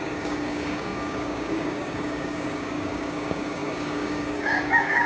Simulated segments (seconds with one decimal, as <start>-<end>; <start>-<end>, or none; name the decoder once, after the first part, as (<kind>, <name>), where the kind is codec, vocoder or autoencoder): 0.0-5.1 (codec, DAC)